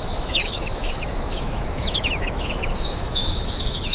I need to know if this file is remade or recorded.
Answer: remade